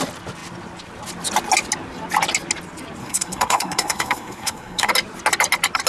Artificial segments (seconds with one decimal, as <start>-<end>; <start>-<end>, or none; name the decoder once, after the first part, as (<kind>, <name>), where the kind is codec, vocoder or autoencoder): 3.0-4.9 (codec, SNAC)